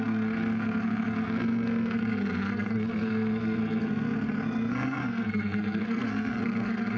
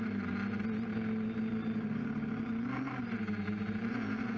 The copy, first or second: first